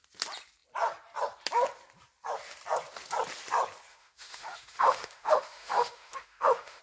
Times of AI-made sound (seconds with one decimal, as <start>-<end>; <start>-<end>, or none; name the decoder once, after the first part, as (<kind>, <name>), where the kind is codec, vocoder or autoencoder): 3.9-6.8 (autoencoder, DAC-VAE)

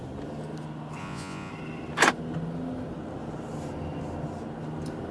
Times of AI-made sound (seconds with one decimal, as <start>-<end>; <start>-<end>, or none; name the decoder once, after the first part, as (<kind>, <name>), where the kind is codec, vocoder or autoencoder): 1.0-1.5 (vocoder, Vocos)

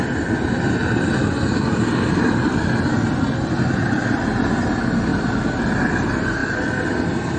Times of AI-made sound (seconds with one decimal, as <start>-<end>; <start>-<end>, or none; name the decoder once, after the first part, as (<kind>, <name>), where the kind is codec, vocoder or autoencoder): 5.1-5.6 (vocoder, BigVGAN v2)

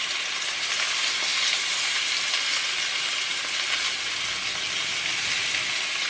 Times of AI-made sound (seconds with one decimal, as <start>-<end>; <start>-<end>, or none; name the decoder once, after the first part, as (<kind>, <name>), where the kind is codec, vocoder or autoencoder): none

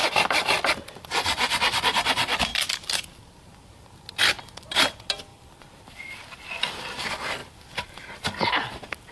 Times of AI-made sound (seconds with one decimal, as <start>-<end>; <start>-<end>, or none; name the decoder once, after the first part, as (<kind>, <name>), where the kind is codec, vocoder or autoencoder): 2.5-3.0 (vocoder, BigVGAN v2); 5.3-6.8

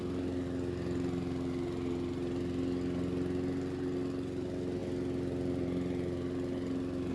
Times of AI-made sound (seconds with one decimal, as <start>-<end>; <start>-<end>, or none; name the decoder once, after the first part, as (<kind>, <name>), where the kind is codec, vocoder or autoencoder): none